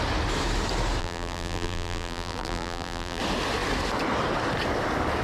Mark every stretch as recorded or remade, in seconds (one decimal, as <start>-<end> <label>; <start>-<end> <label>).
0.0-1.0 recorded; 1.0-3.2 remade; 3.2-5.2 recorded

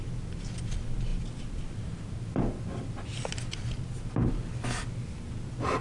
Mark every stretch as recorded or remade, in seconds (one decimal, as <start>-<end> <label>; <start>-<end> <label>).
0.0-5.8 recorded

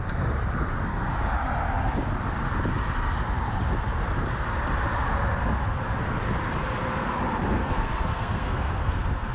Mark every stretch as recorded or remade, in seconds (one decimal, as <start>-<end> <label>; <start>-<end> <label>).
0.0-7.6 recorded; 7.6-9.3 remade

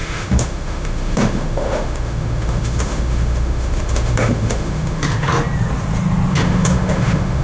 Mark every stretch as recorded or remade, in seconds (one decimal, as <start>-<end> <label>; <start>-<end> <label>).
0.0-5.3 remade; 5.3-6.3 recorded; 6.3-7.4 remade

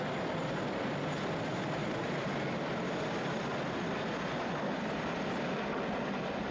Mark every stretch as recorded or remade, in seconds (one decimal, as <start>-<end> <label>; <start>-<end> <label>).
0.0-1.8 recorded; 1.8-5.7 remade; 5.7-6.5 recorded

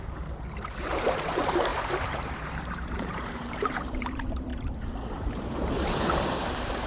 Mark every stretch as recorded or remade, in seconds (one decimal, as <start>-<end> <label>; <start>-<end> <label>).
0.0-6.9 remade

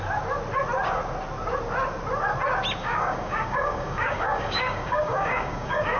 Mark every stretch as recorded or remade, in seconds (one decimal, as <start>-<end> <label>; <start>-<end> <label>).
0.0-2.8 recorded; 2.8-6.0 remade